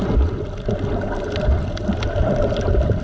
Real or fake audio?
real